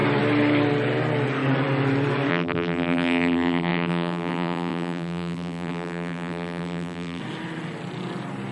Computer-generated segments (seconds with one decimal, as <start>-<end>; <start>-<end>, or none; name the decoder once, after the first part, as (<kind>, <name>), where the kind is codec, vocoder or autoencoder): 2.3-7.2 (vocoder, BigVGAN v2)